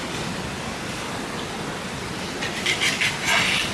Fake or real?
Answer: real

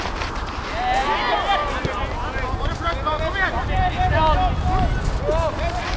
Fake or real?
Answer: real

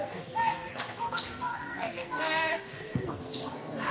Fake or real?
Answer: fake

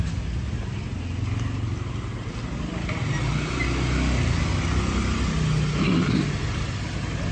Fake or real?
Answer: real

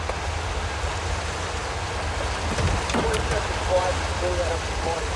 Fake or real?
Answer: real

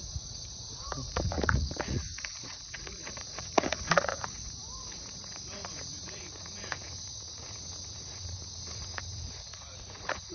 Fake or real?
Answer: fake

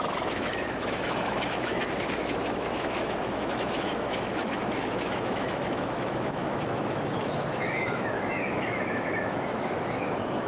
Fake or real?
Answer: fake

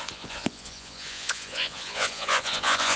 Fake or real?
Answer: fake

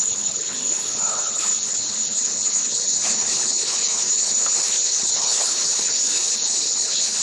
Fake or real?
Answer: fake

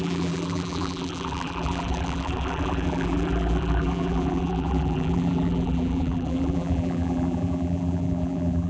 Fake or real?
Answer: fake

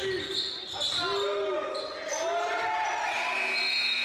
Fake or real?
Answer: real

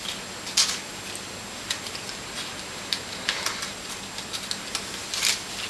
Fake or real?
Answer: real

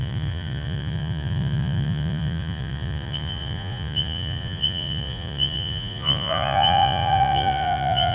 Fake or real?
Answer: fake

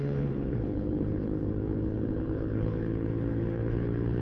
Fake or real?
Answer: fake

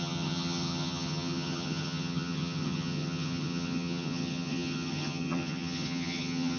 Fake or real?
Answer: fake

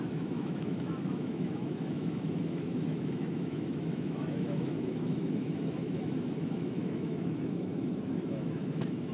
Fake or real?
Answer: fake